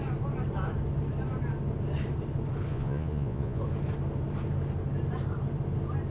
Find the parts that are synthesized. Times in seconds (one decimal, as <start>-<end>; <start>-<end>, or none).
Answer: 2.7-3.6